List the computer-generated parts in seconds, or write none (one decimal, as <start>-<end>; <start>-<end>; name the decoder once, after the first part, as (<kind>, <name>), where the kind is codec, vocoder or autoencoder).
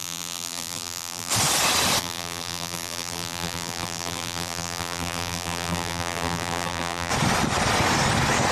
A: 0.0-1.3 (vocoder, BigVGAN v2); 2.0-7.1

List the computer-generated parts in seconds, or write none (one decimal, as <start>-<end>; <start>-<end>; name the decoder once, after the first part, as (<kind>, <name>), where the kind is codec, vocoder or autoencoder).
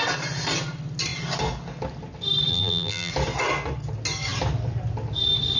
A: 2.5-3.1 (vocoder, BigVGAN v2)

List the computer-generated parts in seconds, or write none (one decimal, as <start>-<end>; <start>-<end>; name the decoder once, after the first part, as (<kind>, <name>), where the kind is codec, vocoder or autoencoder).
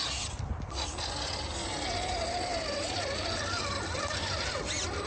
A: 2.5-4.5 (vocoder, BigVGAN v2)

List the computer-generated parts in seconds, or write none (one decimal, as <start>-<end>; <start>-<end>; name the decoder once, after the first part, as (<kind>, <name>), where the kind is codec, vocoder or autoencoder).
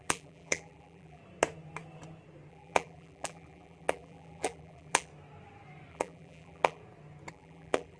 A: 0.0-1.2 (vocoder, BigVGAN v2); 2.5-5.1; 5.9-6.8; 7.3-8.0